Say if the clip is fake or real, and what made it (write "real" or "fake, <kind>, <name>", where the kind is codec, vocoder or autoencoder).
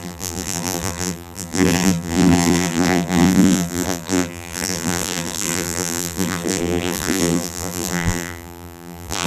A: fake, vocoder, BigVGAN v2